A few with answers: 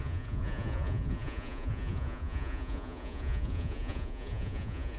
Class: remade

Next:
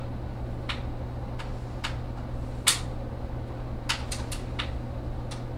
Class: recorded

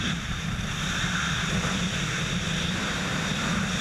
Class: recorded